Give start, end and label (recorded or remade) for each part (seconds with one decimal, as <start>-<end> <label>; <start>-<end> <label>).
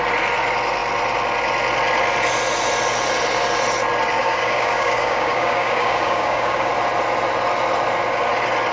0.0-4.2 recorded; 4.2-6.7 remade; 6.7-8.7 recorded